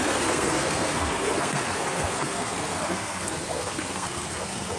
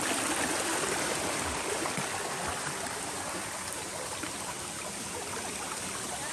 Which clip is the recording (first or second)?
second